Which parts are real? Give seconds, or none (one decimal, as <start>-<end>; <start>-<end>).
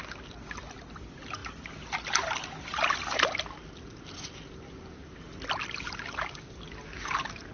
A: 0.0-7.5